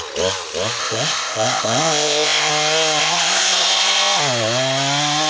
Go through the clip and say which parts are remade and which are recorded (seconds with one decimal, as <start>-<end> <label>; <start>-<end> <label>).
0.0-0.8 recorded; 0.8-2.5 remade; 2.5-3.0 recorded; 3.0-4.2 remade; 4.2-5.3 recorded